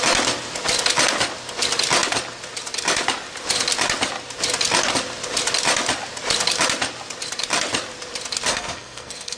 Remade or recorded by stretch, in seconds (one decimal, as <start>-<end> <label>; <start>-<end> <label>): 0.0-8.5 recorded; 8.5-9.4 remade